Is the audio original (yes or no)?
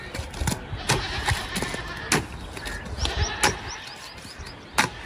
yes